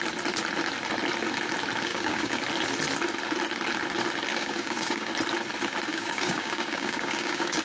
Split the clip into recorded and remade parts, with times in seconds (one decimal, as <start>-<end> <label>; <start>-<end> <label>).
0.0-1.9 recorded; 1.9-2.4 remade; 2.4-4.3 recorded; 4.3-5.1 remade; 5.1-5.9 recorded; 5.9-7.6 remade